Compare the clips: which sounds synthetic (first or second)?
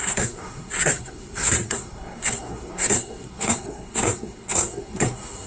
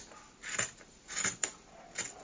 first